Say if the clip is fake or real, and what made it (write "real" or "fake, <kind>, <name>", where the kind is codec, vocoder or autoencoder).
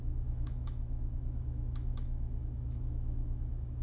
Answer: fake, autoencoder, DAC-VAE